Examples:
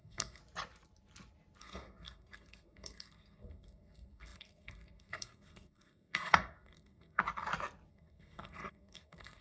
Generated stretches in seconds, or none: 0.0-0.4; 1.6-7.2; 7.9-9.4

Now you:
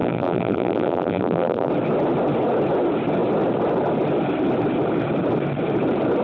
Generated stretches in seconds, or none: 0.0-1.7